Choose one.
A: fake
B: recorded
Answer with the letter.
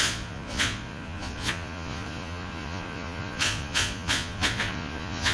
A